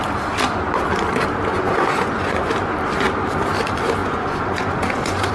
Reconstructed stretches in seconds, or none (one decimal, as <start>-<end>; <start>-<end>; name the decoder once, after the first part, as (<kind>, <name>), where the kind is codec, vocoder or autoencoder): 1.5-2.5 (vocoder, Vocos); 4.0-5.3